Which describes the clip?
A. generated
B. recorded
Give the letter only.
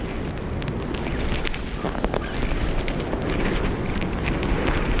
B